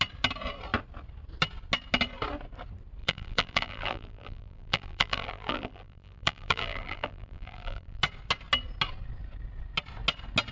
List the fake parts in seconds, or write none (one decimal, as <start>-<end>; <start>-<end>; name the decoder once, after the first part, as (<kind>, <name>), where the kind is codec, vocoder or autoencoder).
3.0-8.0 (vocoder, BigVGAN v2)